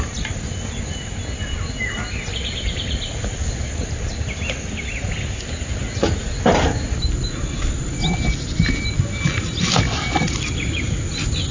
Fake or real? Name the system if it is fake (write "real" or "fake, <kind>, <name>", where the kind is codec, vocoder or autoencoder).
real